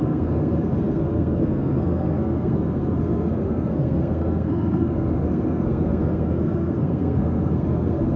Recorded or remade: remade